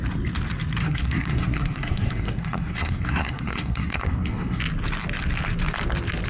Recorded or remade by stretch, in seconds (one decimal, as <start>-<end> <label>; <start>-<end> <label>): 0.0-0.8 recorded; 0.8-4.6 remade; 4.6-6.3 recorded